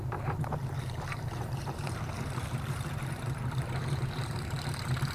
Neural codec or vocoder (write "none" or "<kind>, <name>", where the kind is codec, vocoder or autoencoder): vocoder, BigVGAN v2